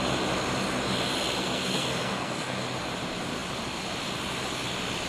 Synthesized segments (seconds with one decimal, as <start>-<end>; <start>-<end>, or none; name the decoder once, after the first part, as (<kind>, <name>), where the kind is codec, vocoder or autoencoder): 1.4-2.6 (codec, SNAC)